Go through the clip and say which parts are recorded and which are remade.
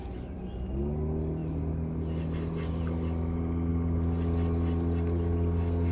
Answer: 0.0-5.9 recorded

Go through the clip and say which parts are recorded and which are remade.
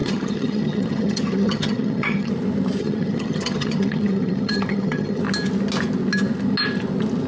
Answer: 0.0-2.3 remade; 2.3-2.8 recorded; 2.8-5.2 remade; 5.2-7.3 recorded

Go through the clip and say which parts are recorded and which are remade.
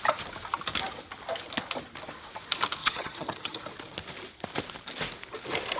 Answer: 0.0-2.8 recorded; 2.8-3.6 remade; 3.6-5.8 recorded